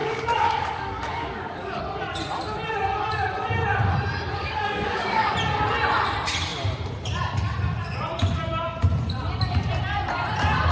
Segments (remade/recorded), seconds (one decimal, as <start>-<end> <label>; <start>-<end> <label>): 0.0-1.8 remade; 1.8-4.4 recorded; 4.4-5.3 remade; 5.3-10.7 recorded